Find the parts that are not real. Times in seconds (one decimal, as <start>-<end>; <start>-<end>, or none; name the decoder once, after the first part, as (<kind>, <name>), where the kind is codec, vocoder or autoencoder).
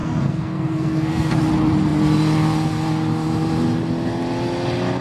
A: 0.0-1.4 (codec, SNAC)